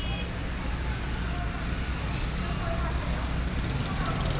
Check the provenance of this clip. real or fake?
real